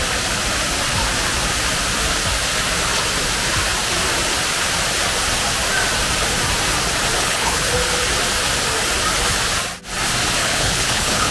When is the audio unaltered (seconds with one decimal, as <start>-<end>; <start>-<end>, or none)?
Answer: 0.0-7.2; 7.7-10.4